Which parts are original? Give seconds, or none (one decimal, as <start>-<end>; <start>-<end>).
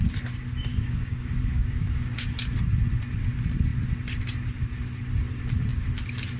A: 0.0-0.7; 2.3-6.4